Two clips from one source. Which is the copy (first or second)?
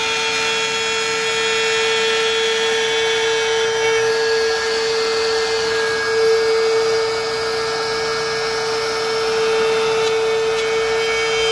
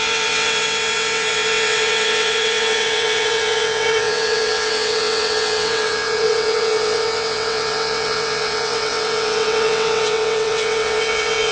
second